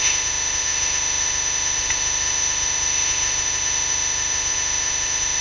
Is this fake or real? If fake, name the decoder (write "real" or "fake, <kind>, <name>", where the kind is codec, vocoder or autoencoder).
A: fake, autoencoder, DAC-VAE